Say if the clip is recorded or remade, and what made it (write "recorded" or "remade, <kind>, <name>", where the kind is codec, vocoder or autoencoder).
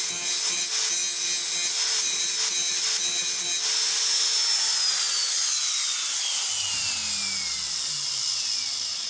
recorded